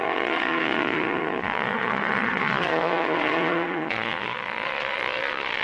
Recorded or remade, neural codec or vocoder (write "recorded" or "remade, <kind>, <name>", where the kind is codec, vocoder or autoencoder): remade, vocoder, Vocos